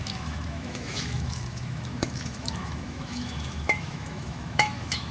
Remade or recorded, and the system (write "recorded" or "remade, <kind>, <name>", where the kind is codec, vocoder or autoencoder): remade, autoencoder, DAC-VAE